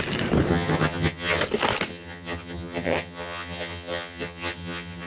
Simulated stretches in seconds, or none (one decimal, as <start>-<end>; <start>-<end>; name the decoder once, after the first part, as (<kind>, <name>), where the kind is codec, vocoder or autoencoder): 0.5-1.4 (vocoder, HiFi-GAN); 1.9-5.1